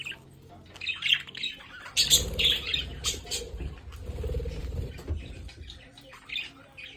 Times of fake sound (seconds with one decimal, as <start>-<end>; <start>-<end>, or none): 2.7-3.3; 4.6-6.5